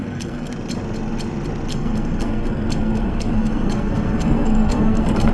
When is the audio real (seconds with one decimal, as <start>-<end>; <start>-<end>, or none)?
0.5-1.7